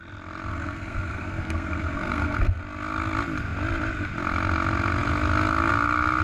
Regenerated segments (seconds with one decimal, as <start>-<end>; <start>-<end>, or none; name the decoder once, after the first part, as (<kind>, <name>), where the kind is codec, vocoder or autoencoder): 0.5-2.6 (codec, SNAC)